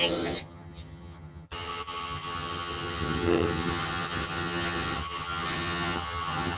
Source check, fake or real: fake